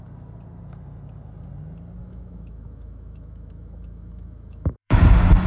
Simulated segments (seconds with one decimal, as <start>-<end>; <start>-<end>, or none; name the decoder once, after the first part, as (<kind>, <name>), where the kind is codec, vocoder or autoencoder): 2.0-5.0 (autoencoder, DAC-VAE)